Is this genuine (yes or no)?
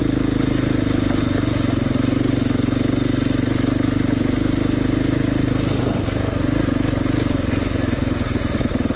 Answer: yes